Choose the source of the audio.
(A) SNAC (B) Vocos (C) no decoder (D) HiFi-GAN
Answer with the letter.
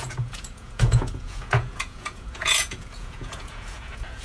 B